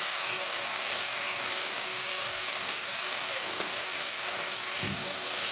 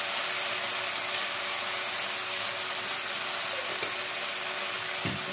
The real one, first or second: second